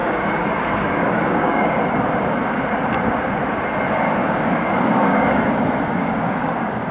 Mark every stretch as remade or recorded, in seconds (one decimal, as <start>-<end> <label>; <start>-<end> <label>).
0.0-1.8 remade; 1.8-4.2 recorded; 4.2-6.9 remade